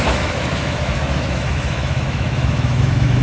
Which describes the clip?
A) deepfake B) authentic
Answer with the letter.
A